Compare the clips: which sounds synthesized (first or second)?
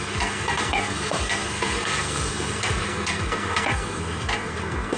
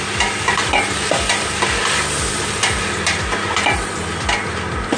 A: first